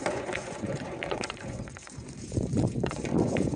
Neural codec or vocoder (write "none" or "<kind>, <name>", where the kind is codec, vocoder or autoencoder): vocoder, Vocos